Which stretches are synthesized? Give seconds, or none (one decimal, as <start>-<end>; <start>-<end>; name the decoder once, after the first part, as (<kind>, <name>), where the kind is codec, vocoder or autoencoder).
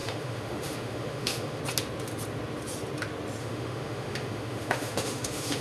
0.0-1.6 (autoencoder, DAC-VAE); 3.4-5.6